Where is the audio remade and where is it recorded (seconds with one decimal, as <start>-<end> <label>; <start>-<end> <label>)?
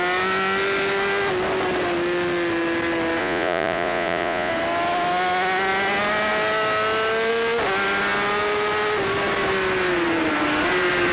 0.0-3.2 recorded; 3.2-4.5 remade; 4.5-11.1 recorded